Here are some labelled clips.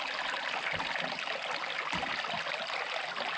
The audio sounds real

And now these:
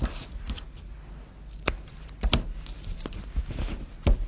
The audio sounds real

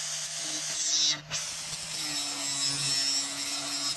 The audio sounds real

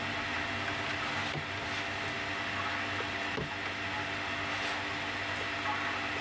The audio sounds real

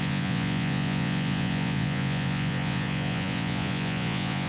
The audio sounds fake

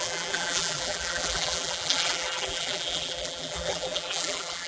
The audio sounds fake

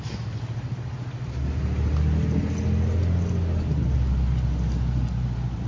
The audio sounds real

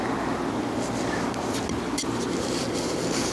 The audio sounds real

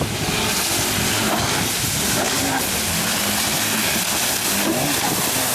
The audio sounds real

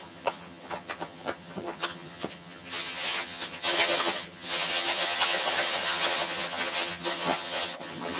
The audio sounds fake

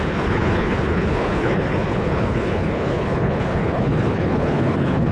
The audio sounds fake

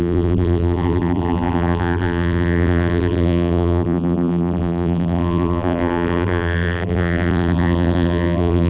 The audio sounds fake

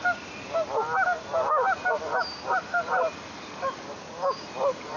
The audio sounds real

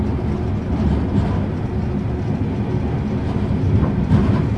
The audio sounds real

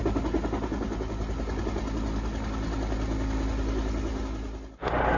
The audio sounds real